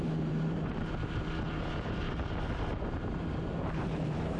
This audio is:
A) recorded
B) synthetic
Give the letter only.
B